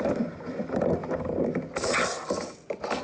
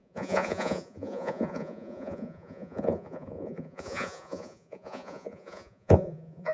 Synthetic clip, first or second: second